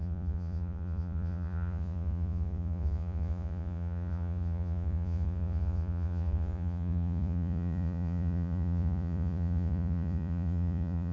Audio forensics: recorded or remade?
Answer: remade